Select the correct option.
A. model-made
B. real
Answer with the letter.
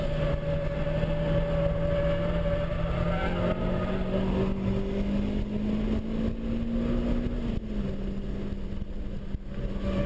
B